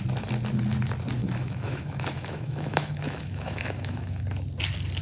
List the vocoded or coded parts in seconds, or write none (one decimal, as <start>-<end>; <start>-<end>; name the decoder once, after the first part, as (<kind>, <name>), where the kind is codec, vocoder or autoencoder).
1.2-4.2 (autoencoder, DAC-VAE)